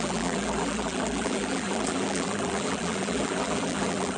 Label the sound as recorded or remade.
remade